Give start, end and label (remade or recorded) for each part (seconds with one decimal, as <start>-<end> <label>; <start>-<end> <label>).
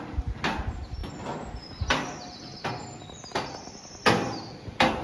0.0-5.0 recorded